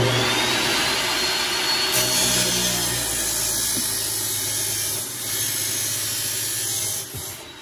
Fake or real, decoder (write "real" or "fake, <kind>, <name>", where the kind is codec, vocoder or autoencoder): real